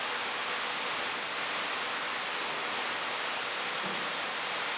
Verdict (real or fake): real